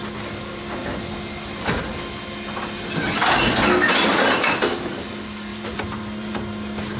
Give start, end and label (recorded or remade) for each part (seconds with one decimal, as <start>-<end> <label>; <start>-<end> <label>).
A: 0.0-5.5 recorded; 5.5-6.3 remade; 6.3-7.0 recorded